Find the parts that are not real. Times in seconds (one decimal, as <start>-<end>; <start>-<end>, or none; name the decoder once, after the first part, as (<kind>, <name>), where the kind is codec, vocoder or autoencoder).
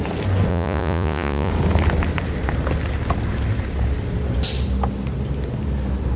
0.5-1.5 (vocoder, Vocos)